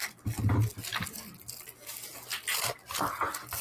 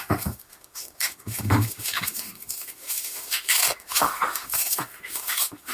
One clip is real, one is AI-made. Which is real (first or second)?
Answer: first